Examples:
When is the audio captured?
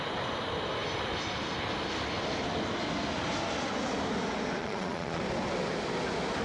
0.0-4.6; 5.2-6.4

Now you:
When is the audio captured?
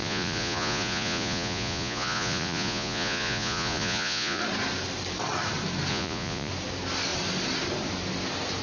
4.4-5.9; 6.5-8.6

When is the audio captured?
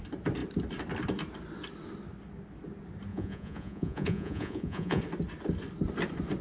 0.0-3.1; 5.0-6.4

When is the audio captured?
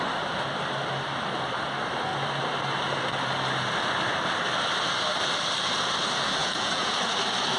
0.0-6.4; 7.0-7.6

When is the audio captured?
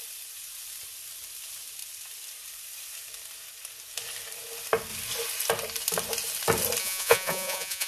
0.0-6.8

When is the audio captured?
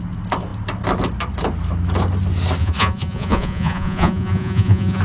0.0-2.6